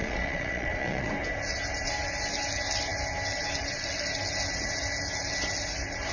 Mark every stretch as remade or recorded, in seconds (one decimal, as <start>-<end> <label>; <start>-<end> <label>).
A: 0.0-1.1 remade; 1.1-6.1 recorded